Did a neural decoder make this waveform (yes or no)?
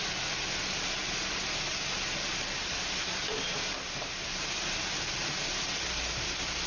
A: no